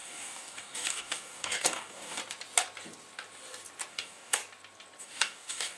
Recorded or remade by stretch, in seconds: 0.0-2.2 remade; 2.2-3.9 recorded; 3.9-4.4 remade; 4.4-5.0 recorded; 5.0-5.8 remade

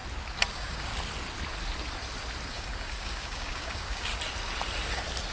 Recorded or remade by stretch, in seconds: 0.0-0.5 recorded; 0.5-0.9 remade; 0.9-2.5 recorded; 2.5-4.1 remade; 4.1-5.3 recorded

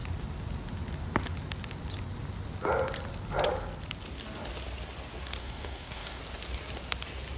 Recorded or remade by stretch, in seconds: 0.0-5.4 recorded; 5.4-6.2 remade; 6.2-7.4 recorded

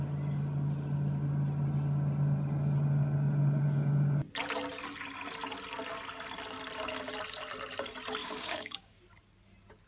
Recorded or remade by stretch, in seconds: 0.0-8.2 recorded; 8.2-9.0 remade; 9.0-9.9 recorded